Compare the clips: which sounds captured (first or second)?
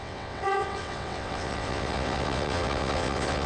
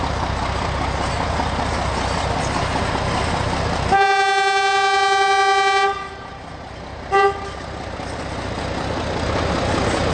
second